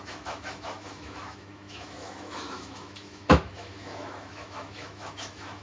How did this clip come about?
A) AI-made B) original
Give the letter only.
A